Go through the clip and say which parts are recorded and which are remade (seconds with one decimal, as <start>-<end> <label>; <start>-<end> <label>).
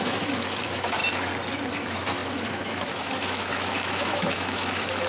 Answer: 0.0-1.0 remade; 1.0-1.7 recorded; 1.7-5.1 remade